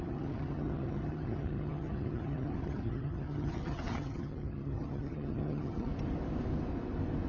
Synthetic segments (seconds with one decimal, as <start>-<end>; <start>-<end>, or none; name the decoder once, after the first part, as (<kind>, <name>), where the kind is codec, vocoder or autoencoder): 0.0-5.9 (vocoder, HiFi-GAN)